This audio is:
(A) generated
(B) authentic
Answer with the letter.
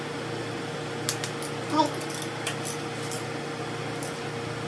B